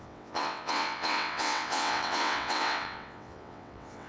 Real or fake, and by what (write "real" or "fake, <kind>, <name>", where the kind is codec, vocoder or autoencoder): fake, vocoder, WaveNeXt